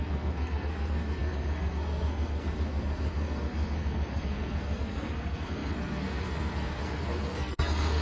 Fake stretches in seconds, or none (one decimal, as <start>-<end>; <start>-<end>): 0.0-8.0